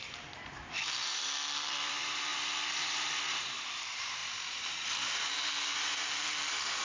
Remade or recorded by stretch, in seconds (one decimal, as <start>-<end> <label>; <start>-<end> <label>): 0.0-6.8 remade